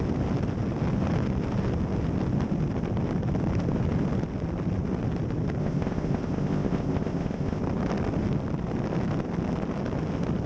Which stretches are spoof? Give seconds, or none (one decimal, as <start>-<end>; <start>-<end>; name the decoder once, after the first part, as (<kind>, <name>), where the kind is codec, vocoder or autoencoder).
5.6-7.6 (codec, ZipCodec)